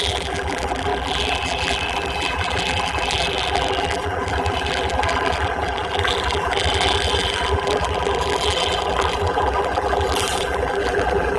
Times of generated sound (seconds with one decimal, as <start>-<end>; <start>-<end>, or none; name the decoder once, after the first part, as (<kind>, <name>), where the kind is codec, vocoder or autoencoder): 0.0-11.4 (vocoder, BigVGAN v2)